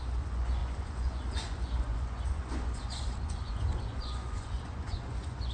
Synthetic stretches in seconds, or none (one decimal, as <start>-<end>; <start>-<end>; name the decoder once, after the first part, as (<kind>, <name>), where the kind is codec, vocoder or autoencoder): 0.0-5.5 (vocoder, Vocos)